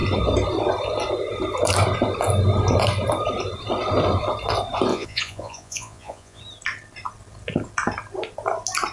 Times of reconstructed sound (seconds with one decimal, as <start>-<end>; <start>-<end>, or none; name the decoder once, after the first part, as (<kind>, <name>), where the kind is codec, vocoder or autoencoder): 4.9-6.4 (vocoder, Vocos)